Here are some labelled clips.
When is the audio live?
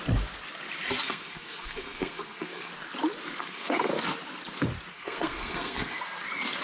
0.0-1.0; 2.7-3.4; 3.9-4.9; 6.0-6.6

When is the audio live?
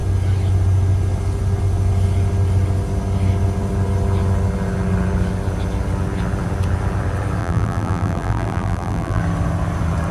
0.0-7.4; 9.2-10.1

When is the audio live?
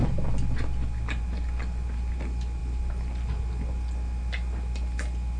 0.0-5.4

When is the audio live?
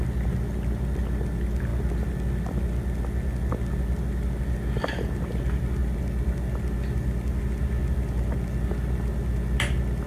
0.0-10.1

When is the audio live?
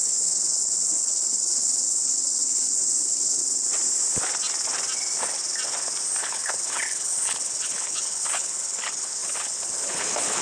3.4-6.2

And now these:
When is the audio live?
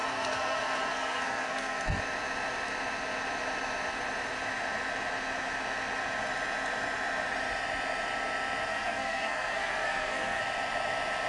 2.0-8.7; 10.4-11.3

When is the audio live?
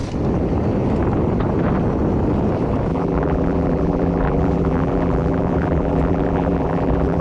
0.0-2.9